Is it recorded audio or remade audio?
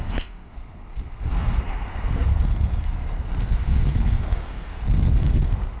remade